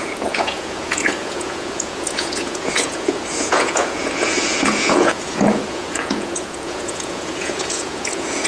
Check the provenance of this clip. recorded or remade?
remade